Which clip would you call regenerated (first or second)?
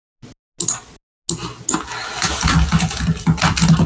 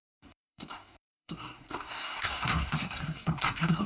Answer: second